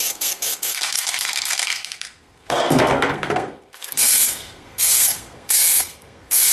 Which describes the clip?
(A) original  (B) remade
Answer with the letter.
B